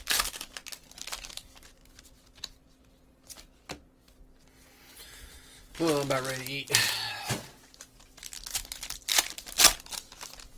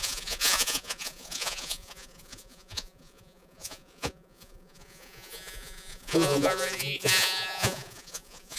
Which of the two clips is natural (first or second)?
first